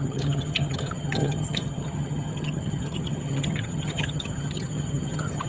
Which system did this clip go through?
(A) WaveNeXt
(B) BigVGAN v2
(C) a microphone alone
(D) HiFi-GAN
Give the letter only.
D